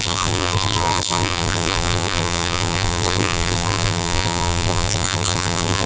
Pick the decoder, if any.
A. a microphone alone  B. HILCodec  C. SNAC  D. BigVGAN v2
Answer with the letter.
D